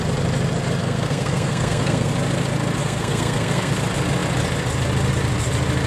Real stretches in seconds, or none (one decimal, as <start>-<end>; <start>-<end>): 0.0-0.8; 2.1-2.8; 3.7-5.9